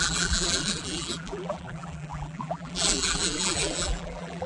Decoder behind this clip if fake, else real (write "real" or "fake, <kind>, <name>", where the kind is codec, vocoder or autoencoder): fake, vocoder, BigVGAN v2